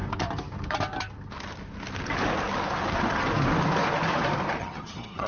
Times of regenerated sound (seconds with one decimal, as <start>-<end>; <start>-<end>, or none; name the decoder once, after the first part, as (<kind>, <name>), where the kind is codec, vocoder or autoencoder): 4.6-5.3 (vocoder, HiFi-GAN)